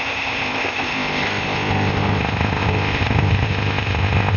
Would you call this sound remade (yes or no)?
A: yes